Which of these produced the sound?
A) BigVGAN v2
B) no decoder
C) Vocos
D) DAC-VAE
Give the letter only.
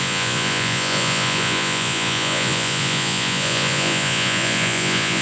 C